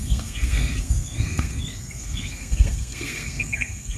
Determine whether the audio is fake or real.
fake